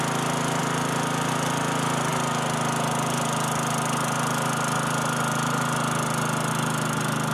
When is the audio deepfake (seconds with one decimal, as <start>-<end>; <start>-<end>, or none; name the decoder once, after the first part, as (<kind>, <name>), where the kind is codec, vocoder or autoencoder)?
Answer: none